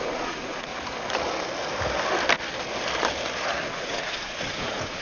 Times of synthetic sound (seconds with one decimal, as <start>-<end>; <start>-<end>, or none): 0.0-0.7; 3.7-5.0